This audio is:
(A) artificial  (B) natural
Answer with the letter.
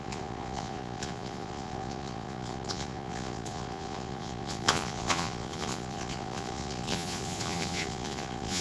A